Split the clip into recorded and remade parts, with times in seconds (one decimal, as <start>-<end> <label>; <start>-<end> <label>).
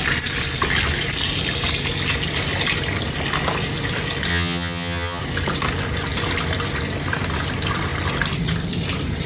0.0-4.3 recorded; 4.3-5.2 remade; 5.2-9.3 recorded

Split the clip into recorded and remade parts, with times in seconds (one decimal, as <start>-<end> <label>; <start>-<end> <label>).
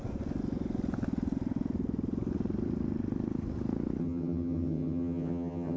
0.0-4.0 recorded; 4.0-5.8 remade